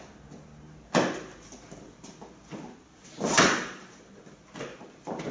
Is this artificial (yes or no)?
no